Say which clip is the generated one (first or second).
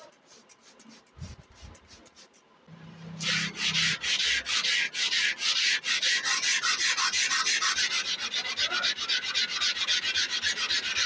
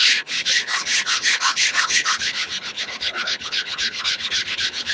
second